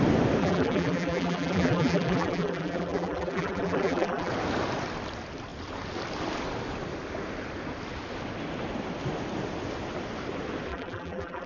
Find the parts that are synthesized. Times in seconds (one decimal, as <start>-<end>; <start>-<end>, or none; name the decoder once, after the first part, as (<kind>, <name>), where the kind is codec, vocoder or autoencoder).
0.4-4.3 (vocoder, BigVGAN v2); 10.7-11.5